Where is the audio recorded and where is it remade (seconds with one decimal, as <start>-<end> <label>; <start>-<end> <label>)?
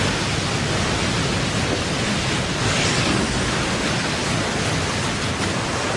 0.0-6.0 recorded